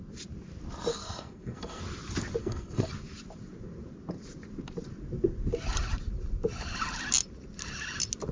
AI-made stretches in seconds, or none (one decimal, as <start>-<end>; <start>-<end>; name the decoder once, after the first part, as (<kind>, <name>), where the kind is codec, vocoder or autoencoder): 0.9-1.8 (codec, SNAC); 2.4-2.9